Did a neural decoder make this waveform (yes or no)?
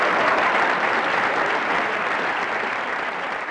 no